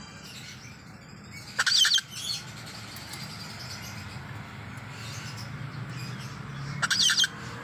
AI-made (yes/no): no